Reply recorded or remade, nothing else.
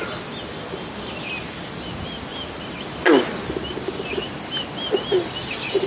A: recorded